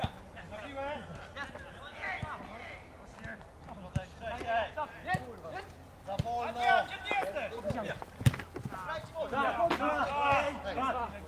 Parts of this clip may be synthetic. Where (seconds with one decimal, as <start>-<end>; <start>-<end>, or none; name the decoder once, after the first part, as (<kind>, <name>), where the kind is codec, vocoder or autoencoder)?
none